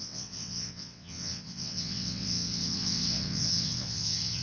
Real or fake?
fake